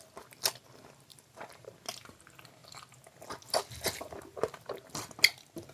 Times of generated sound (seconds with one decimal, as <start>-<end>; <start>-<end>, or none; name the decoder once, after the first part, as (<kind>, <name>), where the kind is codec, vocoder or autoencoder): 1.1-1.7 (vocoder, BigVGAN v2)